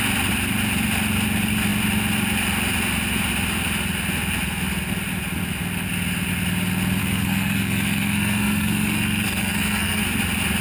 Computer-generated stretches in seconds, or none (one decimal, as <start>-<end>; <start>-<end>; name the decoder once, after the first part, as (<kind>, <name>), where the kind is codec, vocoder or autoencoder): 7.0-10.0 (codec, SNAC)